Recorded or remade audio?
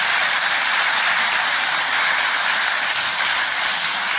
recorded